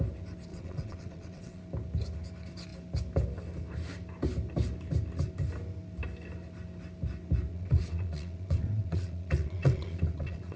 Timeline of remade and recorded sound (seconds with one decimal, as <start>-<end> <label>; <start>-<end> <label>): 0.0-0.5 recorded; 0.5-1.6 remade; 1.6-7.5 recorded; 7.5-10.6 remade